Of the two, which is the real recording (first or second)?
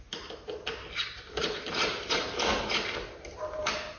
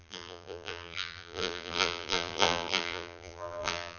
first